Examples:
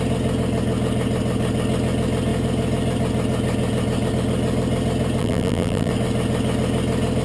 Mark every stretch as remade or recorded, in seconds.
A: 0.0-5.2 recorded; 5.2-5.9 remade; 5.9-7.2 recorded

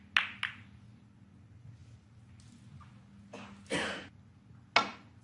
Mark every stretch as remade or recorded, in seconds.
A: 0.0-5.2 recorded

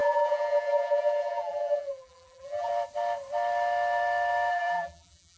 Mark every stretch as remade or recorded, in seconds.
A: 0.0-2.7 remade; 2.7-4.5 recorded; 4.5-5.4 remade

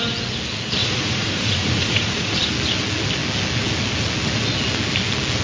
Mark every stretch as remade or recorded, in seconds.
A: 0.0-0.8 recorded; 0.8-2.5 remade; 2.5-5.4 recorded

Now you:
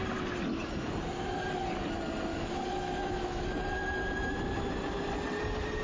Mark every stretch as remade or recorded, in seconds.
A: 0.0-2.3 recorded; 2.3-3.4 remade; 3.4-5.8 recorded